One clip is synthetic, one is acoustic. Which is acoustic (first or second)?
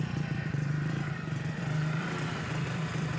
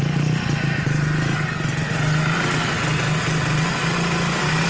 second